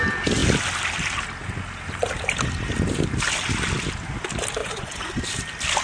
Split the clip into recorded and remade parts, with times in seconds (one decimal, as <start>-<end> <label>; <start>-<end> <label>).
0.0-4.6 recorded; 4.6-5.1 remade; 5.1-5.8 recorded